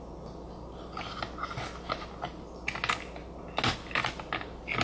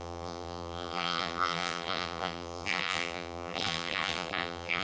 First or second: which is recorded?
first